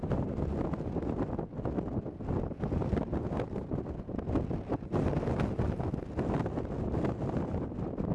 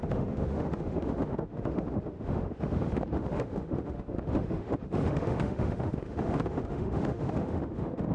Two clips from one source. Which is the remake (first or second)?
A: second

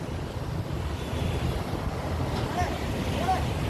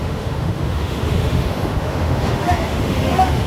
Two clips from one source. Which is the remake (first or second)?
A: second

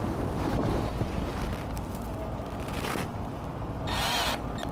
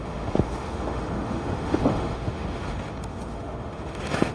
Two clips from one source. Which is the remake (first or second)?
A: second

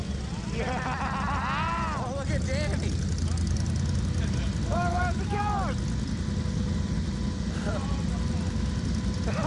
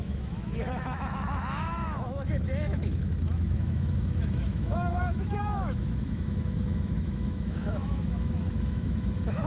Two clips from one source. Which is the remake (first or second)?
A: second